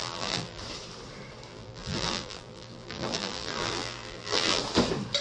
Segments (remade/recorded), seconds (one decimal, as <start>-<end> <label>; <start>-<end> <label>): 0.0-0.6 remade; 0.6-1.5 recorded; 1.5-4.6 remade; 4.6-5.2 recorded